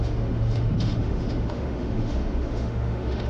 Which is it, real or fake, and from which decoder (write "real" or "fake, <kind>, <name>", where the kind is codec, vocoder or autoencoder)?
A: fake, autoencoder, DAC-VAE